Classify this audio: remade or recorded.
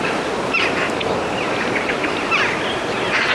recorded